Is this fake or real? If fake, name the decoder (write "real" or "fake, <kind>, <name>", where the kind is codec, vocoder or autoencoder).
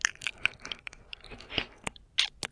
real